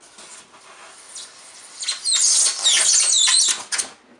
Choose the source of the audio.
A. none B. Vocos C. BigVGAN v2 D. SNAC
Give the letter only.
A